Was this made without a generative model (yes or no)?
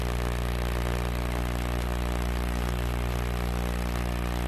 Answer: yes